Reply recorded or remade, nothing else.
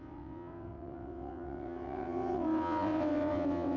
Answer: remade